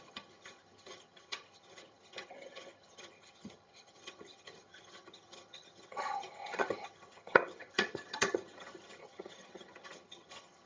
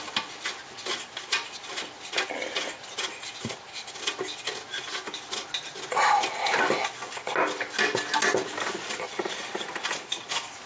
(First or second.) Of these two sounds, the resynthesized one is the first